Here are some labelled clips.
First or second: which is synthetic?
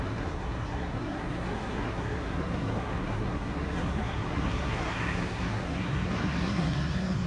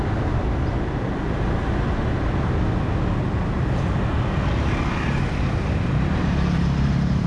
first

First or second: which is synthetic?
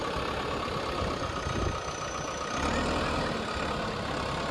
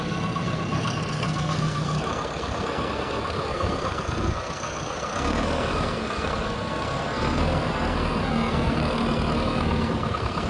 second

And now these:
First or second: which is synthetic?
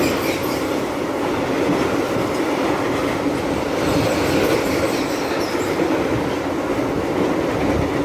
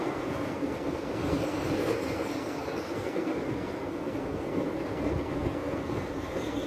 second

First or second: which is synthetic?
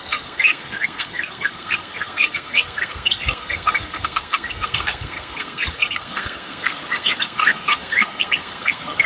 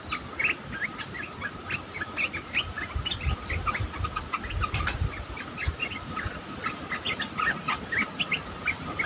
first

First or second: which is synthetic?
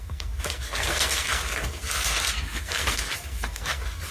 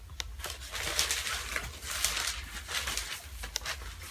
first